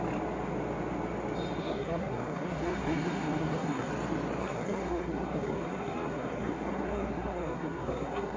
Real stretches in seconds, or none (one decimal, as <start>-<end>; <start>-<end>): 0.0-1.6; 3.9-4.4